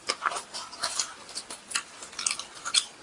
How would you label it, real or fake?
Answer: real